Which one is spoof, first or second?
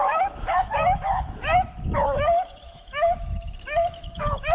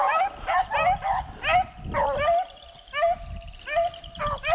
first